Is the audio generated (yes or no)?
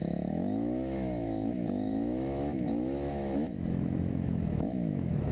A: yes